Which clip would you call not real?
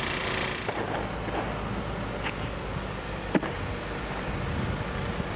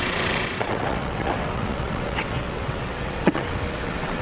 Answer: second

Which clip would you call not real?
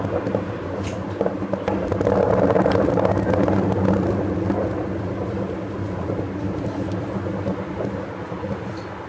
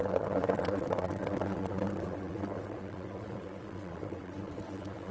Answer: second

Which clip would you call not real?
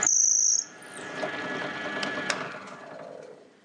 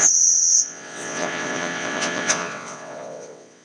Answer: second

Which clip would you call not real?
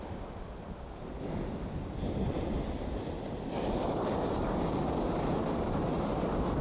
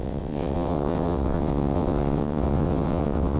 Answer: second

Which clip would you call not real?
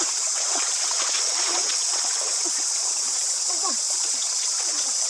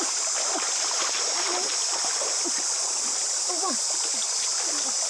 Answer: first